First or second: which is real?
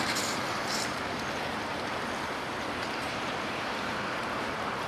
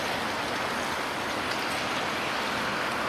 second